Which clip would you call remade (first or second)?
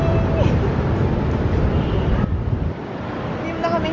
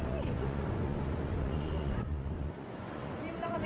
second